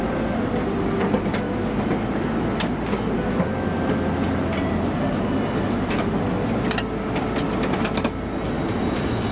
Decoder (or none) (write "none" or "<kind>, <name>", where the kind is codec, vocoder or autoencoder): none